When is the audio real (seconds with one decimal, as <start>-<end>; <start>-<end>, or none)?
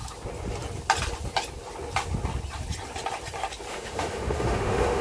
0.0-3.7